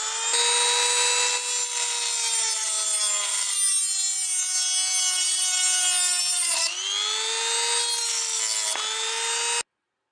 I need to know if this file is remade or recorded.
recorded